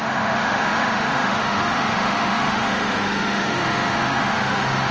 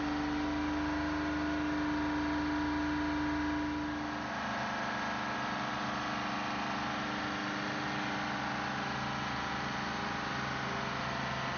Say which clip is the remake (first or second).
first